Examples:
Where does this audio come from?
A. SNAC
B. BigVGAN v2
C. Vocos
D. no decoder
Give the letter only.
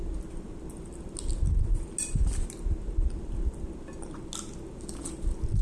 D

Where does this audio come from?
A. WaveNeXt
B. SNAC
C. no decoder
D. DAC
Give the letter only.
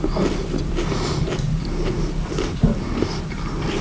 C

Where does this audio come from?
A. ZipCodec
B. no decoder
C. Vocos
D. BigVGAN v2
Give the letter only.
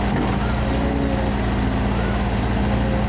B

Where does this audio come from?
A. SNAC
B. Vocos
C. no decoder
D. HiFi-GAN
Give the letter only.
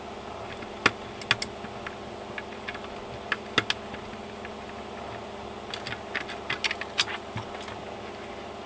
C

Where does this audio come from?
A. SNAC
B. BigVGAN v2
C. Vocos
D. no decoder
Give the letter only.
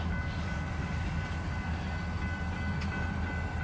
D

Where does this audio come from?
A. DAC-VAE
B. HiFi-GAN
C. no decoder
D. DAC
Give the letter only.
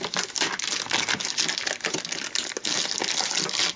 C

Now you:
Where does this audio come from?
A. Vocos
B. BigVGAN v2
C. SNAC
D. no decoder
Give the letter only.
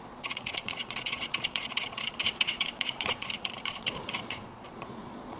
A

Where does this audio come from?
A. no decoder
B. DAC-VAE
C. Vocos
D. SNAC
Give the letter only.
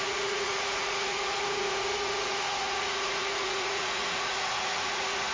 C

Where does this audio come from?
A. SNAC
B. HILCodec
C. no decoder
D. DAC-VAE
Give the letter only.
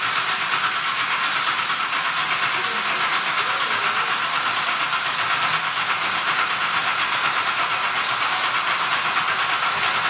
C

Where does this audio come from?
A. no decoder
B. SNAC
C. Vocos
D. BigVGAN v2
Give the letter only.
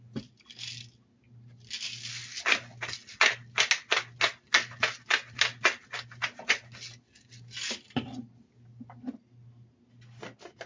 A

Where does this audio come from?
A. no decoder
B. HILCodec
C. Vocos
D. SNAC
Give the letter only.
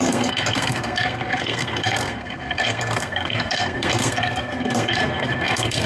D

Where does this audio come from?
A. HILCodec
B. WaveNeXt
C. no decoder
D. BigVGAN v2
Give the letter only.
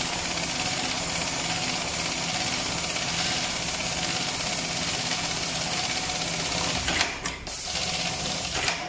C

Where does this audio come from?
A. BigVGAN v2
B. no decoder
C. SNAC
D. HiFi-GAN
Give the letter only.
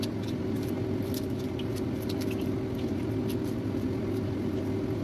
B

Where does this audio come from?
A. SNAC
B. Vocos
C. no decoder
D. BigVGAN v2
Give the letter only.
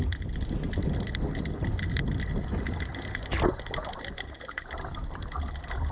C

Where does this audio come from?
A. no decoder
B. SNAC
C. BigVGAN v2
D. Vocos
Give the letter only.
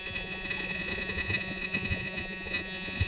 D